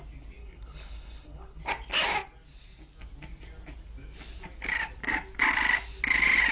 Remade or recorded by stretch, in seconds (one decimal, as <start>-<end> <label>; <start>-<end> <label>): 0.0-0.4 recorded; 0.4-1.6 remade; 1.6-6.5 recorded

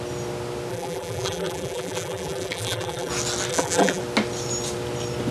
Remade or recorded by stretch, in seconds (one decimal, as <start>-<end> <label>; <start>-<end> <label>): 0.0-0.7 recorded; 0.7-3.1 remade; 3.1-3.5 recorded; 3.5-4.0 remade; 4.0-5.3 recorded

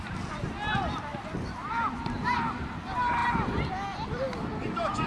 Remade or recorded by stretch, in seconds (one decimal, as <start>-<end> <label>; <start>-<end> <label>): 0.0-5.1 recorded

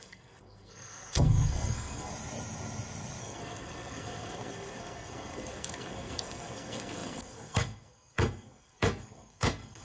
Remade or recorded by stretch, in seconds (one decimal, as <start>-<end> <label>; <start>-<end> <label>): 0.0-2.1 remade; 2.1-3.2 recorded; 3.2-9.8 remade

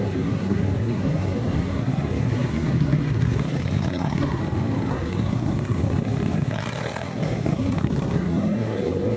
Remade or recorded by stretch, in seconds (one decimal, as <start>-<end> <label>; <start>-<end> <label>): 0.0-4.4 remade; 4.4-4.9 recorded; 4.9-9.2 remade

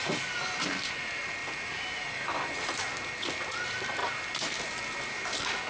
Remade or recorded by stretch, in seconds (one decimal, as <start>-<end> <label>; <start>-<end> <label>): 0.0-1.4 recorded; 1.4-2.9 remade; 2.9-5.7 recorded